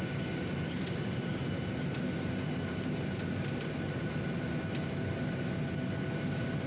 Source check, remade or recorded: recorded